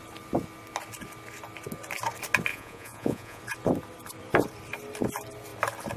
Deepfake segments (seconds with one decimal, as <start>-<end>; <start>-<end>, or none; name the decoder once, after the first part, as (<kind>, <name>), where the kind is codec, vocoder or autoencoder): 2.5-3.4 (vocoder, Vocos)